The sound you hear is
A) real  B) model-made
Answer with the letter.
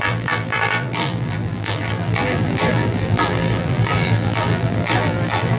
B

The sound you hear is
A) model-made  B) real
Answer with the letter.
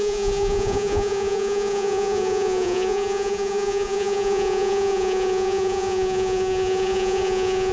A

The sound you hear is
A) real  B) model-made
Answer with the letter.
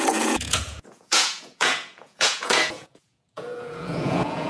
B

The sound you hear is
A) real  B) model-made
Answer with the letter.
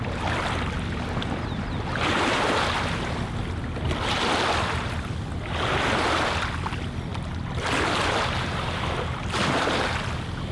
A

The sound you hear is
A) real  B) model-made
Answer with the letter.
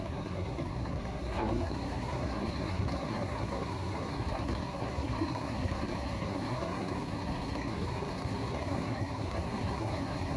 B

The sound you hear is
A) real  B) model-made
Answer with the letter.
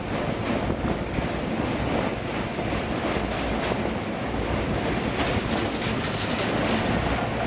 A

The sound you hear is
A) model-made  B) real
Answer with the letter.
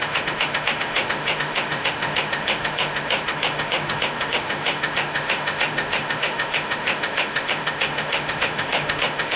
A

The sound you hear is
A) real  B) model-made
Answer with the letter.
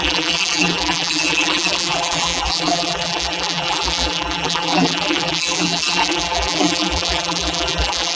B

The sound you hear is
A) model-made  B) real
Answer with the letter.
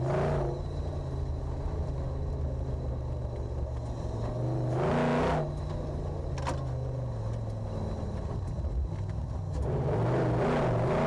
B